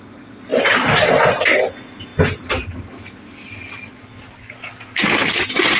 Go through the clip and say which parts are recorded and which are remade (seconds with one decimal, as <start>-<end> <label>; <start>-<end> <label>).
0.0-5.8 recorded